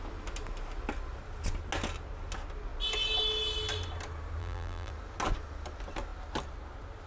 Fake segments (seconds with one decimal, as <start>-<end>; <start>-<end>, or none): 4.4-4.9